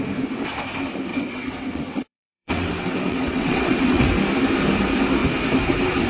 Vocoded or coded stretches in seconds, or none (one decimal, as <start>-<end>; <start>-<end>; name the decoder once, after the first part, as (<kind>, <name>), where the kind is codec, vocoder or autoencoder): 1.1-4.1 (vocoder, WaveNeXt)